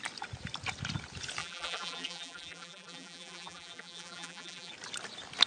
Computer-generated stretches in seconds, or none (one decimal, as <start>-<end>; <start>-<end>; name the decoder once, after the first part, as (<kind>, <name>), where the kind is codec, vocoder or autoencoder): 1.4-4.7 (vocoder, BigVGAN v2)